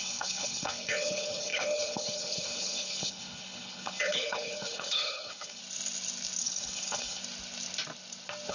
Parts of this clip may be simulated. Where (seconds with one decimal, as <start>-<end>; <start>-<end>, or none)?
0.0-5.6; 6.4-7.2